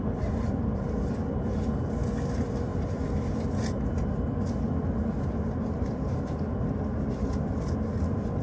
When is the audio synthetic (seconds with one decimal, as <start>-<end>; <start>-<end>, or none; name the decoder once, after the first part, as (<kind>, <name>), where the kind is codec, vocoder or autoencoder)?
none